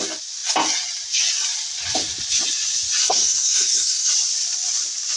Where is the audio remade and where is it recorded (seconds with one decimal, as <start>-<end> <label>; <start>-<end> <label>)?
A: 0.0-3.0 recorded; 3.0-4.1 remade; 4.1-5.2 recorded

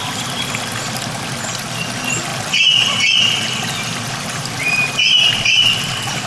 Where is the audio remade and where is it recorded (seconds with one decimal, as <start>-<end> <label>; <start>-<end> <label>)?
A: 0.0-6.3 recorded